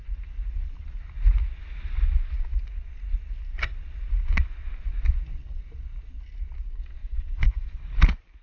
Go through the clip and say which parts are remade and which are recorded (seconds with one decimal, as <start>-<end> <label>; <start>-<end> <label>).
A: 0.0-7.0 recorded; 7.0-7.8 remade; 7.8-8.4 recorded